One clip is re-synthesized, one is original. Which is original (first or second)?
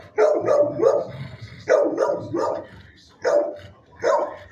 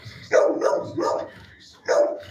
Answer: first